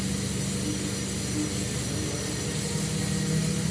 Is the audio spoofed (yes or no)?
no